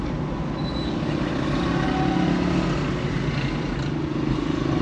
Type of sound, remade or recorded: recorded